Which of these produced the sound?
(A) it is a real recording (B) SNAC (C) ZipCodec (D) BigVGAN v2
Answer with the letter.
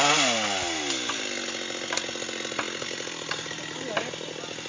A